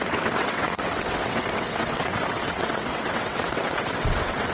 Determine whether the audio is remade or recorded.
remade